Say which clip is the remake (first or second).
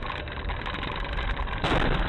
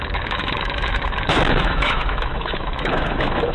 second